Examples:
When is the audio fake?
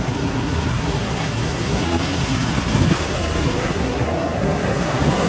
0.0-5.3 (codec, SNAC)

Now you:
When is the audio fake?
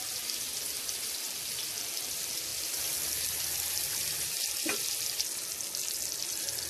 2.5-5.5 (vocoder, BigVGAN v2)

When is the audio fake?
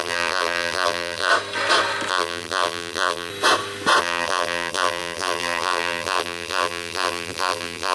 0.0-1.3 (vocoder, BigVGAN v2); 2.1-3.3; 4.0-7.9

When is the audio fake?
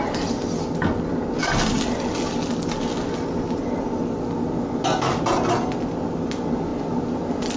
none